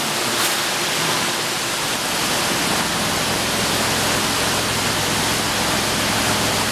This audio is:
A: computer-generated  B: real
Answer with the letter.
B